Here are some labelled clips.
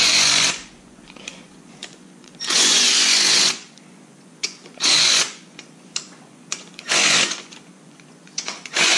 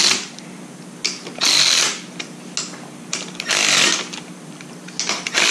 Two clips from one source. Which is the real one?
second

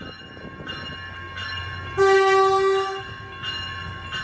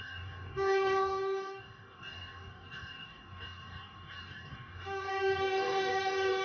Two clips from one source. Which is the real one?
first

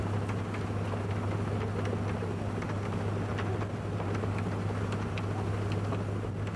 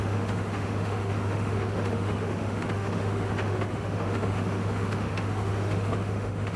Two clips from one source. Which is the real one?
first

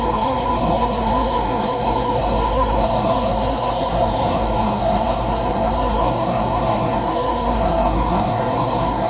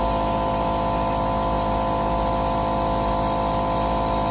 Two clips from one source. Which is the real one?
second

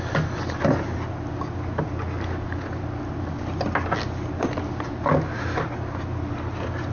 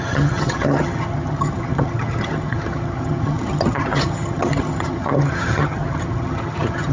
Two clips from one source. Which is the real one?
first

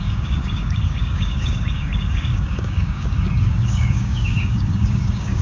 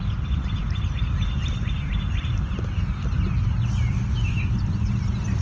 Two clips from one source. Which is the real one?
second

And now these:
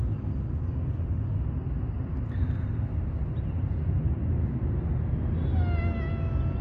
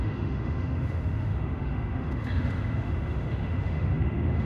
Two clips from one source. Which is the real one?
first